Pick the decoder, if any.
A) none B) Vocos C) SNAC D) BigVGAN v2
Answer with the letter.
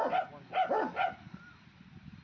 A